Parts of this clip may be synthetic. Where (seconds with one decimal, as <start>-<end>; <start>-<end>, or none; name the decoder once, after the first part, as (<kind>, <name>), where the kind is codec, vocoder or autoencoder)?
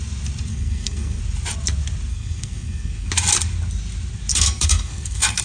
0.5-1.2 (codec, SNAC); 2.1-3.1; 4.3-5.4